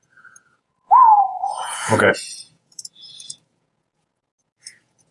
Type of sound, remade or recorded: remade